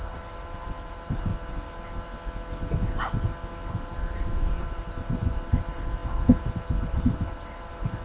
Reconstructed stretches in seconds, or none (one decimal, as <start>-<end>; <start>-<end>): 0.0-1.3; 3.7-6.0; 6.8-8.0